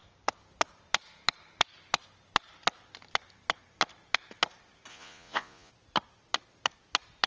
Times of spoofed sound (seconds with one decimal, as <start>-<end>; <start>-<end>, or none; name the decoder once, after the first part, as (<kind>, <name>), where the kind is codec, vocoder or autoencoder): 4.9-5.7 (vocoder, Vocos)